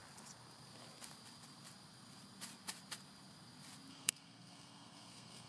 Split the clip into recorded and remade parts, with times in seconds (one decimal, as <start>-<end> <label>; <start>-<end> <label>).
0.0-3.9 recorded; 3.9-5.5 remade